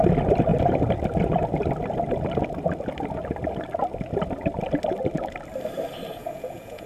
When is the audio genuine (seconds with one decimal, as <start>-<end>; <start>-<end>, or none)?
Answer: 0.0-6.2